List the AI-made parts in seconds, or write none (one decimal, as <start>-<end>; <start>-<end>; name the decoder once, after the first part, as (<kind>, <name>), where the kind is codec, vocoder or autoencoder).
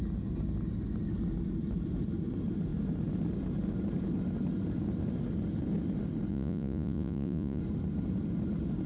6.3-7.6 (vocoder, Vocos)